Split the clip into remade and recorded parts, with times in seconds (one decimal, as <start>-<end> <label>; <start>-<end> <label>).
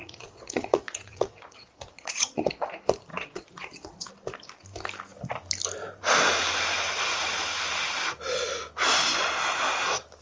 0.0-2.7 remade; 2.7-3.1 recorded; 3.1-4.1 remade; 4.1-10.2 recorded